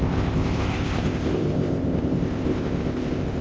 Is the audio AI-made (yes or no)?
yes